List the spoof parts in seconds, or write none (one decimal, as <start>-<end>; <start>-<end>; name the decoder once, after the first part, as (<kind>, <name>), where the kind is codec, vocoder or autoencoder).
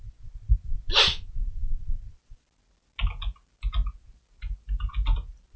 none